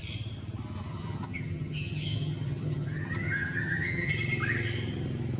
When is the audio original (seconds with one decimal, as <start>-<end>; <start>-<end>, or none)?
0.0-0.9; 4.1-5.4